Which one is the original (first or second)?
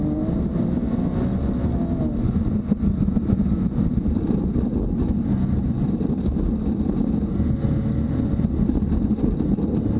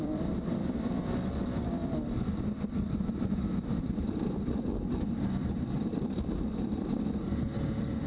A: first